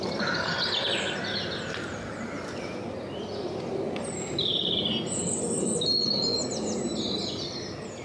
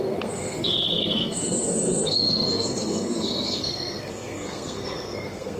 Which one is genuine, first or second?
first